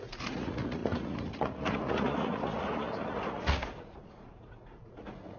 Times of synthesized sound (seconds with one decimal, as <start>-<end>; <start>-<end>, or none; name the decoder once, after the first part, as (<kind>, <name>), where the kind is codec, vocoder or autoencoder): 0.0-5.4 (vocoder, Vocos)